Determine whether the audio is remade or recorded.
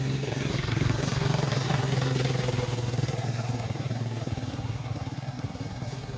remade